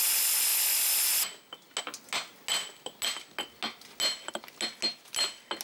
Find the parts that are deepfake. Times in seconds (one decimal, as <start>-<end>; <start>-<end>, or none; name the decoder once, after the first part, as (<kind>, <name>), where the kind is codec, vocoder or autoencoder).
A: none